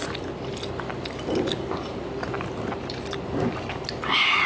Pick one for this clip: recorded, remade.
recorded